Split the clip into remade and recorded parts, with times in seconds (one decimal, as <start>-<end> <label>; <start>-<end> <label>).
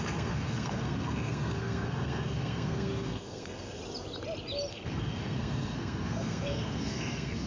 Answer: 0.0-3.8 remade; 3.8-4.7 recorded; 4.7-7.5 remade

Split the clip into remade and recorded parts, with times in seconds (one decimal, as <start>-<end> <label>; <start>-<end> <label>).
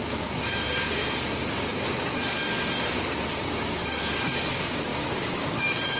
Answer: 0.0-1.0 remade; 1.0-3.4 recorded; 3.4-6.0 remade